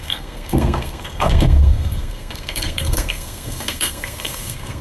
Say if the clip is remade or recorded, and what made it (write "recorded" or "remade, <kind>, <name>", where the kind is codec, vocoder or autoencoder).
remade, codec, SNAC